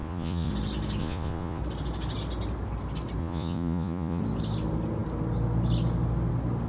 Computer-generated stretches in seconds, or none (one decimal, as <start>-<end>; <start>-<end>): 0.0-0.5; 1.0-1.6; 3.2-4.2